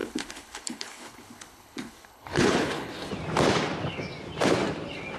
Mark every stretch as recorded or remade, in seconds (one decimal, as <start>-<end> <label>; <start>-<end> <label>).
0.0-3.1 remade; 3.1-5.2 recorded